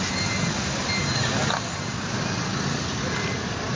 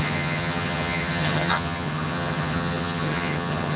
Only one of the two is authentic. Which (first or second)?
first